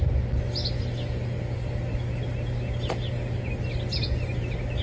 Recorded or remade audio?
recorded